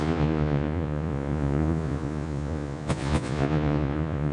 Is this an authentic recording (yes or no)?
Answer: no